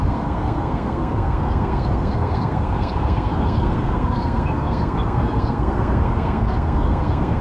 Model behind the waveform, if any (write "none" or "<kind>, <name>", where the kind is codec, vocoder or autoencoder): codec, SNAC